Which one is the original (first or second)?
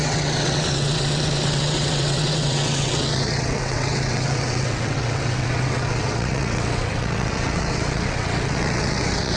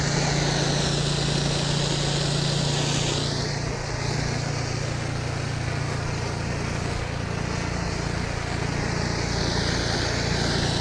second